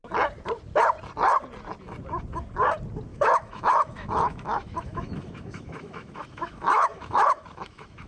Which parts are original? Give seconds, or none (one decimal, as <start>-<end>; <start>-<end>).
0.0-3.1